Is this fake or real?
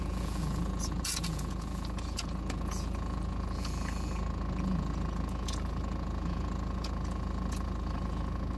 fake